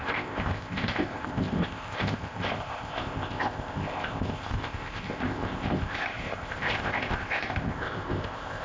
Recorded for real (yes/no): no